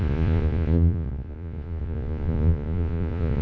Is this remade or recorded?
remade